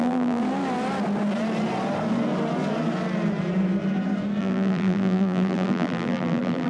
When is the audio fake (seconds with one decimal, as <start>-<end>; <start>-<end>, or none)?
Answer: 0.0-0.4; 4.4-6.7